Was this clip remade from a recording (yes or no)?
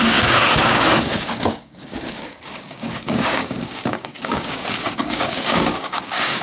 yes